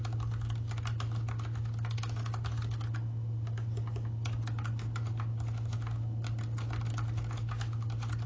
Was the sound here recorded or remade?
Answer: recorded